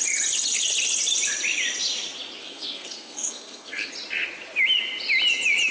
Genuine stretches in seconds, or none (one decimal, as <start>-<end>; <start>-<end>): 0.0-2.4; 3.9-5.7